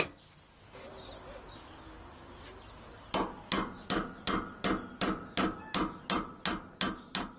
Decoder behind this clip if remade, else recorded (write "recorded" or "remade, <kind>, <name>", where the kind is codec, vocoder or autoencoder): recorded